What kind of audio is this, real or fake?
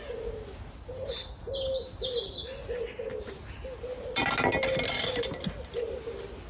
real